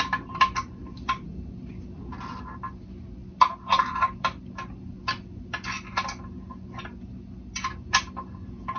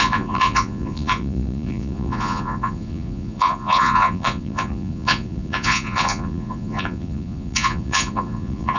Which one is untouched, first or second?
first